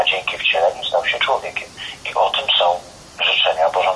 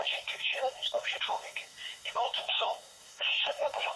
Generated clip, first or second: second